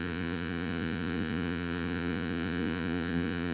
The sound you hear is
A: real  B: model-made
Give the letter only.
B